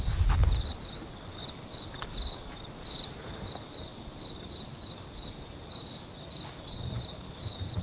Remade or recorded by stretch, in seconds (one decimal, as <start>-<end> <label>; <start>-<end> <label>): 0.0-7.8 recorded